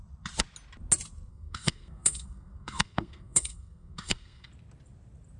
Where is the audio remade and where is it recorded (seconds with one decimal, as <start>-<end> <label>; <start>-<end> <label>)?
0.0-1.3 recorded; 1.3-4.5 remade; 4.5-5.4 recorded